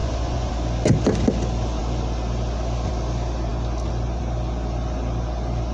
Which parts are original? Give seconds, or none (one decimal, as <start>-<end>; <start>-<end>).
0.5-5.7